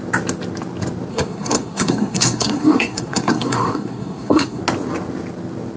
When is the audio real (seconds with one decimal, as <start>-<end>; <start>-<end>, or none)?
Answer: 0.0-1.1; 4.6-5.8